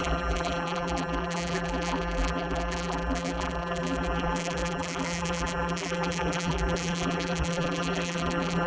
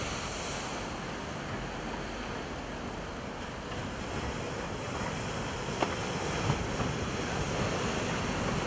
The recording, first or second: second